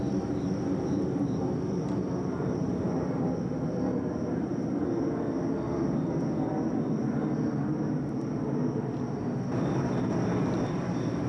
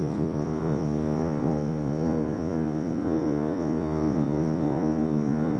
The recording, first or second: first